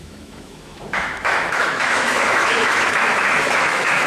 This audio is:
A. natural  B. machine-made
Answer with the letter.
B